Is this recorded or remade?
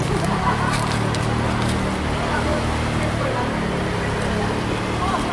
recorded